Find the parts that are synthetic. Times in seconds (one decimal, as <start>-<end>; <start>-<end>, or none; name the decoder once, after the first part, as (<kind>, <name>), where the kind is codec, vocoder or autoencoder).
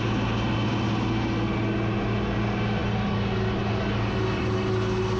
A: none